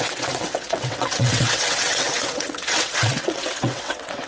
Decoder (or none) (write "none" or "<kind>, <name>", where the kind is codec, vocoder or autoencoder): vocoder, WaveNeXt